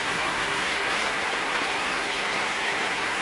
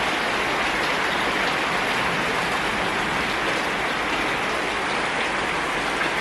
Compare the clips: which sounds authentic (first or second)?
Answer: second